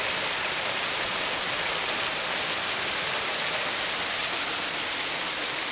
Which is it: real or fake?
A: real